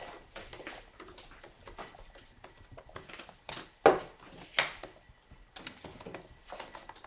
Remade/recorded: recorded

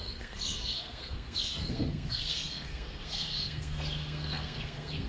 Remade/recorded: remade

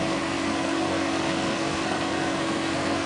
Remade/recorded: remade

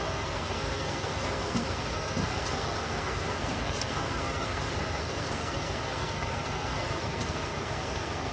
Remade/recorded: remade